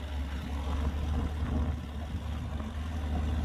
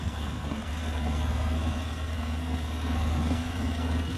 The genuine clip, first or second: first